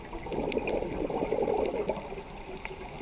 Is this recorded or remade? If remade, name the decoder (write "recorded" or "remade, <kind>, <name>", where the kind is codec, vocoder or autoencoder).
recorded